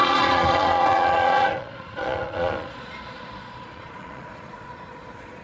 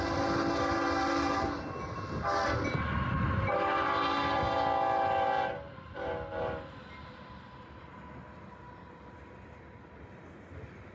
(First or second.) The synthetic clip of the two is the first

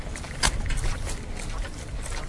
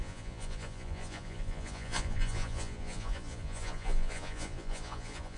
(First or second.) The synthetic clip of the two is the second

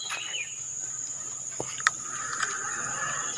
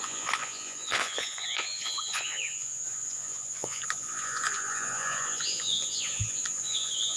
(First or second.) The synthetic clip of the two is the second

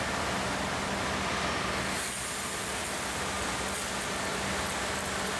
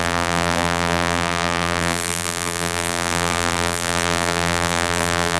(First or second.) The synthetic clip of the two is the second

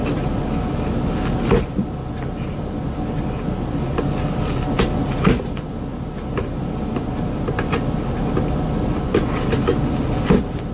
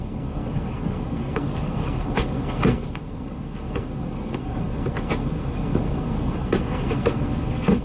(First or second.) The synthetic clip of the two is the second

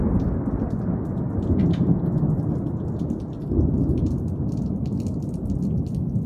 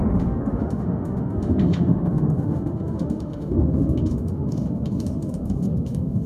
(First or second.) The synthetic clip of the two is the second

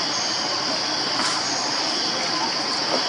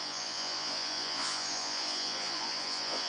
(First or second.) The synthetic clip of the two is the second